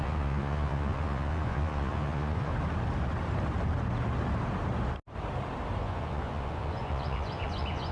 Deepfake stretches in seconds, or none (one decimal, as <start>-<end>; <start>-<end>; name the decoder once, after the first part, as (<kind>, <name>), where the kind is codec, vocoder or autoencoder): 0.0-2.5 (vocoder, Vocos); 5.8-7.9